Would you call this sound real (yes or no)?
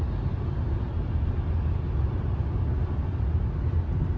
yes